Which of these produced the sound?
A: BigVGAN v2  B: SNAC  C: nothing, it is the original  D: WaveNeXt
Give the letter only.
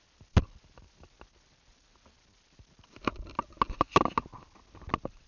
C